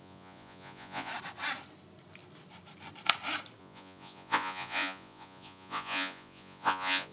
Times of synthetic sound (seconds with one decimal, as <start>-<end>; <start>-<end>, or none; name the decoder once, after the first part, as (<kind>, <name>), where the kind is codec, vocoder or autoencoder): 0.0-1.1 (vocoder, Vocos); 3.6-7.1